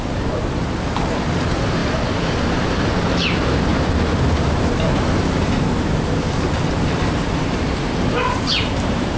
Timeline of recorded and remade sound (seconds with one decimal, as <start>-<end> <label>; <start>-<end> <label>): 0.0-3.7 remade; 3.7-6.2 recorded; 6.2-9.2 remade